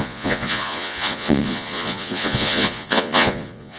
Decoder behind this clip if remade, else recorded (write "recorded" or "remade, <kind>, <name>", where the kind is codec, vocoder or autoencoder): remade, vocoder, Vocos